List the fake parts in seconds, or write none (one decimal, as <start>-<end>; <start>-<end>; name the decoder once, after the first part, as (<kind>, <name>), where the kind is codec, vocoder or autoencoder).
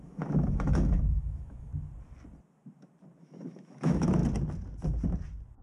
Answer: 0.0-1.7 (autoencoder, DAC-VAE); 3.2-4.2